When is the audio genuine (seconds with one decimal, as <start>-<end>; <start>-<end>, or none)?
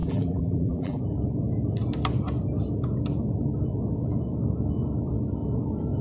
1.0-6.0